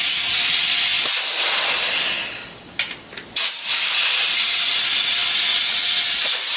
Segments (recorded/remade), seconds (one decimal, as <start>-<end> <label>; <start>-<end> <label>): 0.0-5.5 recorded; 5.5-6.6 remade